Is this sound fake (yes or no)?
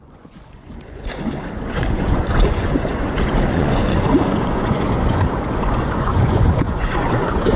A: yes